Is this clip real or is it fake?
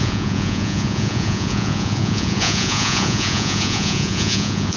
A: fake